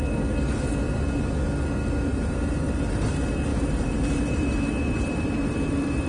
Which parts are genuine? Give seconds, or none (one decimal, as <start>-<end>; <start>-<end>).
0.0-2.1; 3.0-3.5